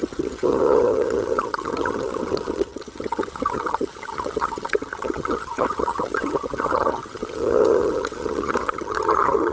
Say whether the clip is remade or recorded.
remade